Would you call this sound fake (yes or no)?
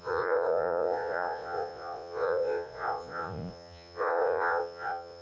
yes